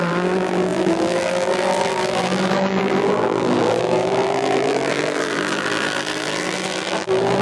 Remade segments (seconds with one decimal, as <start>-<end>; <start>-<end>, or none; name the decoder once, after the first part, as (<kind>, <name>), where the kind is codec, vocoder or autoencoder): 0.0-7.4 (vocoder, BigVGAN v2)